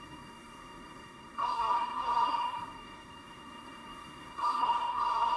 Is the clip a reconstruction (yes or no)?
yes